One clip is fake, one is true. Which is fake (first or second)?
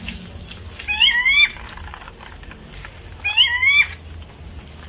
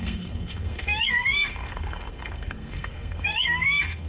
second